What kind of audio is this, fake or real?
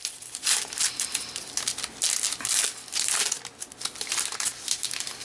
real